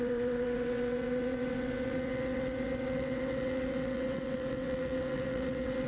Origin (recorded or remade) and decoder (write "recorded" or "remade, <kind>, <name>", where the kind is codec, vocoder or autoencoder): remade, vocoder, WaveNeXt